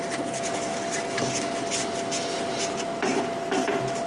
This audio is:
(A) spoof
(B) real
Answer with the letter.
B